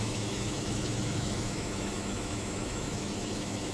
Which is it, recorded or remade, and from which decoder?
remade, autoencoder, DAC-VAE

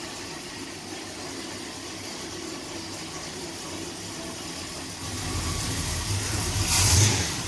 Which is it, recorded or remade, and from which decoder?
recorded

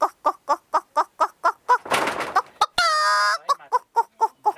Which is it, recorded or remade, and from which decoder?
recorded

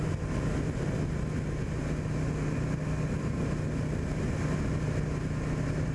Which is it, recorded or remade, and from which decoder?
recorded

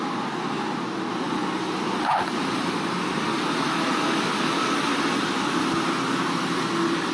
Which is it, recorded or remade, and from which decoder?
recorded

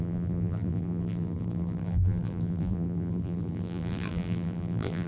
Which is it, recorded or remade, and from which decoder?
remade, vocoder, BigVGAN v2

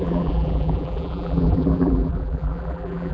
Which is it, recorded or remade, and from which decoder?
remade, vocoder, BigVGAN v2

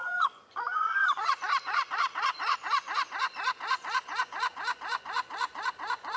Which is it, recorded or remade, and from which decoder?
remade, vocoder, Vocos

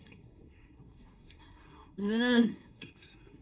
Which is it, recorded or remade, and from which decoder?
remade, codec, SNAC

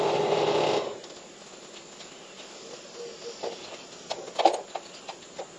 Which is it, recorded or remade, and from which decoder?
recorded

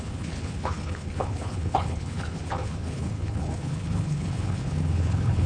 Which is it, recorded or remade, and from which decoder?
remade, codec, HILCodec